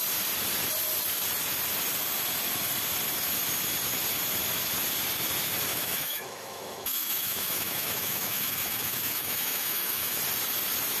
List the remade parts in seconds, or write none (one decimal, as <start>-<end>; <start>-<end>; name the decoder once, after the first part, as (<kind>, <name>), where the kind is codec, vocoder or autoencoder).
5.7-10.2 (autoencoder, DAC-VAE)